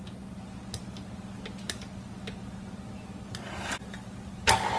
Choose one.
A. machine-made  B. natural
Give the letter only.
B